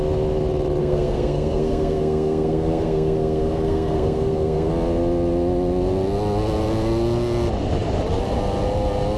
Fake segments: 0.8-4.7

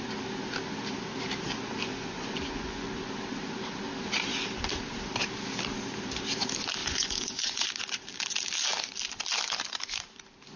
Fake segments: 1.9-2.9; 6.8-7.7

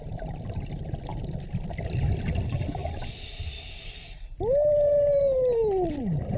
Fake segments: none